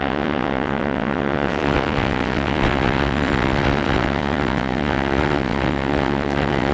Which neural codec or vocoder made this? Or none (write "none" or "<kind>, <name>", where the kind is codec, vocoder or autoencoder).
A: vocoder, WaveNeXt